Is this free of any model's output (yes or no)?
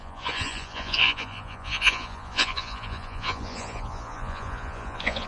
no